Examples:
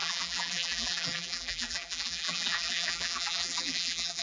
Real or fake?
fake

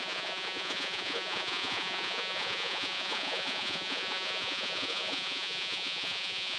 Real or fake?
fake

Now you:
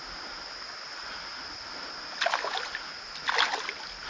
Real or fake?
real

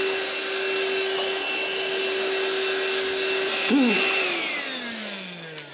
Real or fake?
real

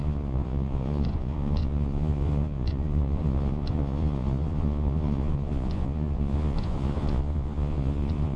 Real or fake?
fake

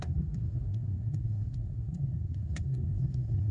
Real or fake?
fake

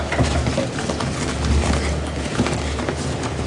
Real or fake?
real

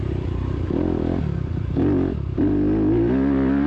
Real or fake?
fake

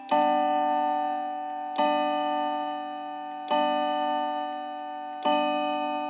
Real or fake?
real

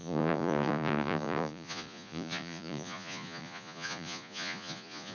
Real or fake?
fake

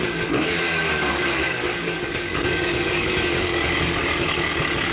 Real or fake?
fake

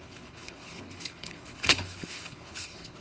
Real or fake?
fake